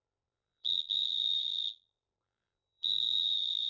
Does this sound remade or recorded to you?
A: remade